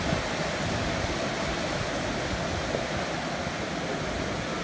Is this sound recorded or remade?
recorded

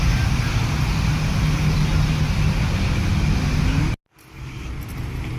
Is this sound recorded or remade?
recorded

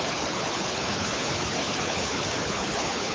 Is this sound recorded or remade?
remade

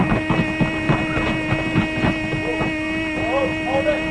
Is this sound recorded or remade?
recorded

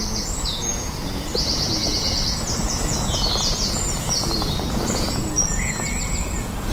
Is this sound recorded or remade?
remade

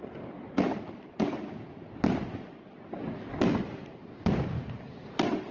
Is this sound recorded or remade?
recorded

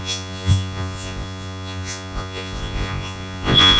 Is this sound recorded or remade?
remade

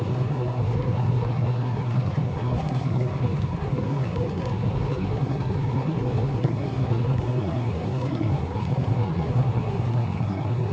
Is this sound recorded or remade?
remade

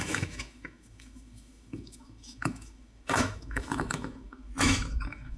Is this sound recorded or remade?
remade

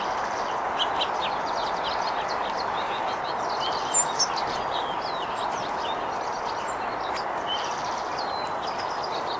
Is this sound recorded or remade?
recorded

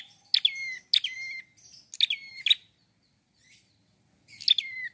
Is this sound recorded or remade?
recorded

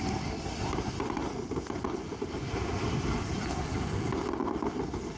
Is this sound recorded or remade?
recorded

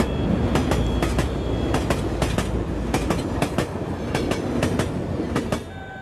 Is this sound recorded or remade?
recorded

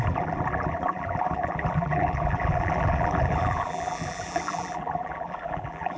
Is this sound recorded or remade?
remade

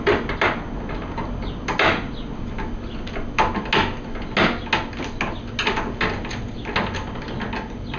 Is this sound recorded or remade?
recorded